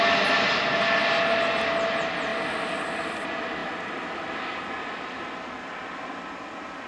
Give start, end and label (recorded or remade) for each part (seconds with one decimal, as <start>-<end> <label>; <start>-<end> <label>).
0.0-6.9 recorded